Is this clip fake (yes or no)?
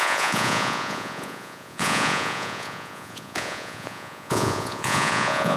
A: yes